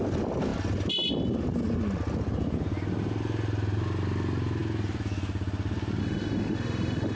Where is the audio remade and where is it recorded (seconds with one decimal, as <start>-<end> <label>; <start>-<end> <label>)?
0.0-6.0 recorded; 6.0-7.2 remade